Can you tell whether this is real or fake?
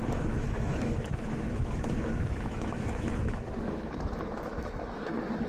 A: fake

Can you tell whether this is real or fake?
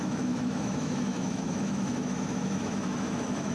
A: fake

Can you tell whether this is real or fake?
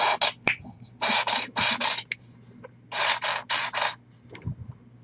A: real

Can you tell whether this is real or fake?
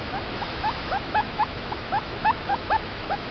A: fake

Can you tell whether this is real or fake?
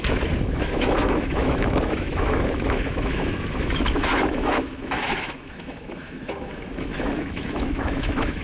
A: fake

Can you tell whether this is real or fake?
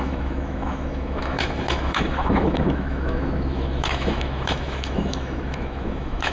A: fake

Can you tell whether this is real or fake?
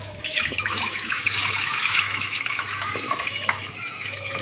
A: fake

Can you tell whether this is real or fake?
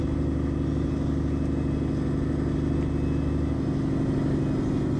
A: real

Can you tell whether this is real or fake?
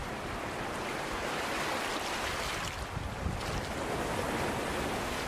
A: real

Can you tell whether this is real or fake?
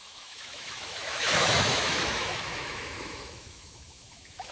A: fake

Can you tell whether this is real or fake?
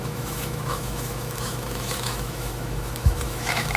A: fake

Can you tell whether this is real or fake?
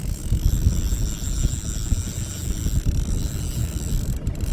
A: real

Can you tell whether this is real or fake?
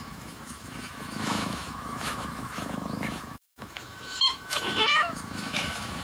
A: fake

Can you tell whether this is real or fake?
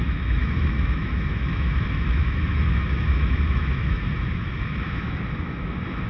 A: fake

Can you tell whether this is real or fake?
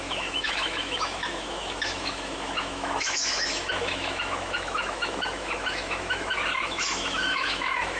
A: fake